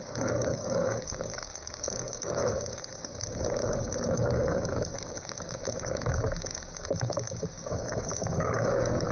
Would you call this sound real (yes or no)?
no